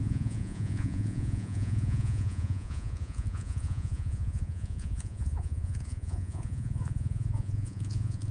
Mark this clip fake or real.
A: fake